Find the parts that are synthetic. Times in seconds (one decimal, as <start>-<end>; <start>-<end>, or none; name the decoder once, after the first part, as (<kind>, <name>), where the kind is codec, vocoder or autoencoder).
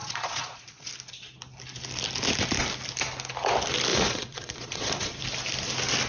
0.0-0.9 (vocoder, Vocos); 3.9-5.2